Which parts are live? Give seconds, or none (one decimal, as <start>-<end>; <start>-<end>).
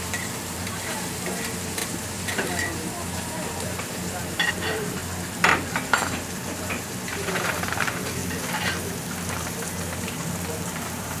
5.0-5.7; 8.2-9.4